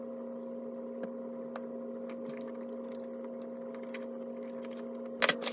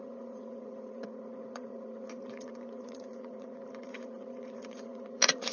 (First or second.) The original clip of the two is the first